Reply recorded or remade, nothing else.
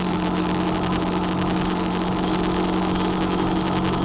recorded